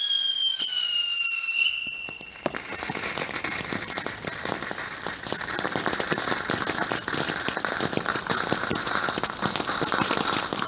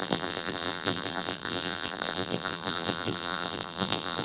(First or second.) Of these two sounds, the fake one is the second